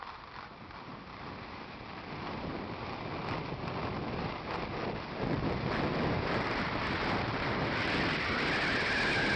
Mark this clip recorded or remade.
recorded